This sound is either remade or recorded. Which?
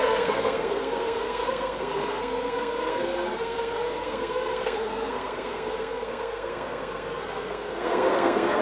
remade